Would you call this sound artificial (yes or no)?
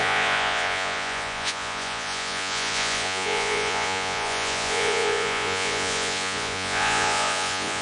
yes